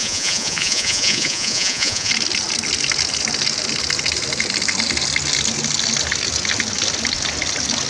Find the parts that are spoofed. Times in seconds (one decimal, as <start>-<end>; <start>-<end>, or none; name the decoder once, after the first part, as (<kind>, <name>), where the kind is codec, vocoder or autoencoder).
0.0-2.1 (vocoder, Vocos)